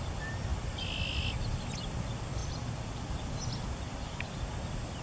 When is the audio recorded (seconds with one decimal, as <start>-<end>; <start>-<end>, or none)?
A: 0.0-5.0